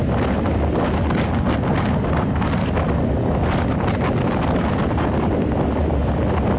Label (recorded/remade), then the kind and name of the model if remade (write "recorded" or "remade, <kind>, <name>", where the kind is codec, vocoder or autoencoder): recorded